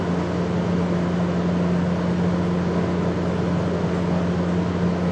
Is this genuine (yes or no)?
yes